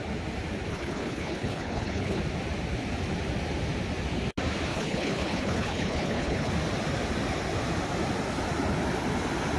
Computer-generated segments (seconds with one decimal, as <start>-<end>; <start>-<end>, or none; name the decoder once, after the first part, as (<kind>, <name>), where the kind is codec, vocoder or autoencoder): 0.7-2.2 (codec, HILCodec); 4.7-6.5